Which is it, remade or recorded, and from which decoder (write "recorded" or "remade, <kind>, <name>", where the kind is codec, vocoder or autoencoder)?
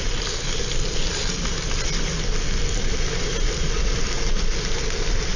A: recorded